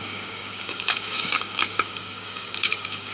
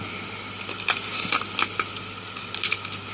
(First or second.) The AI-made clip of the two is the first